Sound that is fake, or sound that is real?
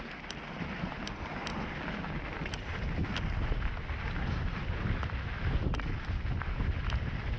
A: real